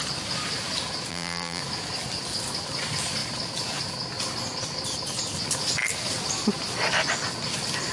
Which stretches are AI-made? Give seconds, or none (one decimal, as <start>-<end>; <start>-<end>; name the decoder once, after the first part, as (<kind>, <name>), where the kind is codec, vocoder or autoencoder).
1.1-1.6 (vocoder, BigVGAN v2)